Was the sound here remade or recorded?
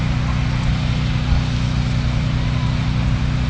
recorded